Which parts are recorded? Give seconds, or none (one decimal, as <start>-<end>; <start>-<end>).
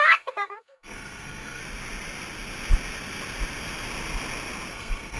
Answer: 1.6-4.7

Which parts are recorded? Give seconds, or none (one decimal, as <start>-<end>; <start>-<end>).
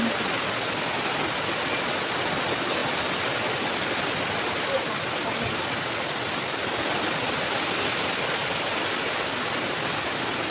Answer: 0.0-10.5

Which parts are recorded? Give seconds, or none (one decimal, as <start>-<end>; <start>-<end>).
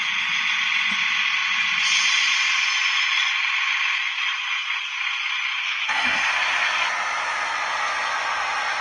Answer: 0.0-5.6; 6.3-8.8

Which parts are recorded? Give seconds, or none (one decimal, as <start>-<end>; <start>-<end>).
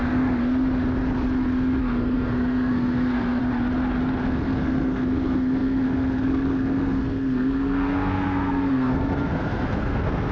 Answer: 0.4-1.8; 3.4-4.2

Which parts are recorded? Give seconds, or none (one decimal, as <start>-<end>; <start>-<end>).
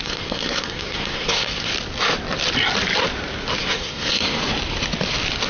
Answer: 1.7-3.6; 4.4-5.5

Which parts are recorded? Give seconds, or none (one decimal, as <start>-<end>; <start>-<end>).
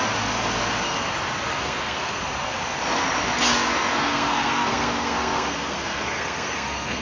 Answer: 0.0-1.5; 2.2-3.9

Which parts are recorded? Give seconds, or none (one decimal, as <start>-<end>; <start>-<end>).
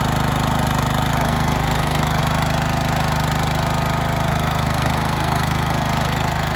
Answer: 0.0-1.1; 2.2-4.3